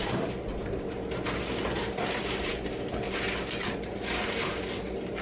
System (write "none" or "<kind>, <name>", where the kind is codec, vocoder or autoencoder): none